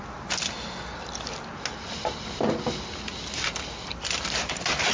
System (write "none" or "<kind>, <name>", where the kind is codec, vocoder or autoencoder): none